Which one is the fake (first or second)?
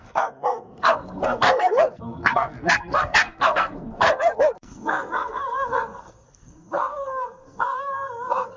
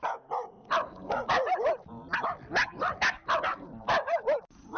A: first